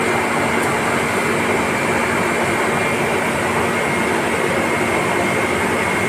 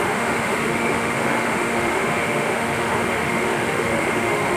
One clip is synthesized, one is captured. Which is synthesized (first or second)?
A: second